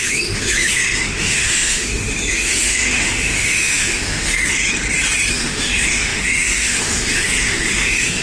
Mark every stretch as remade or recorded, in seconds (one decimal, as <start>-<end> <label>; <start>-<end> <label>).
0.0-4.6 remade; 4.6-5.3 recorded; 5.3-8.2 remade